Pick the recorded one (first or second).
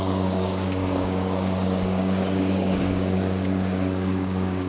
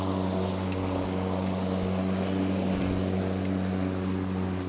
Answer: second